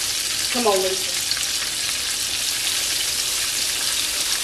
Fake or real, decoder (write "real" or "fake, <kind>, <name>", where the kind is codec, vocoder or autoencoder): real